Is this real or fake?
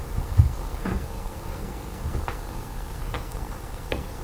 fake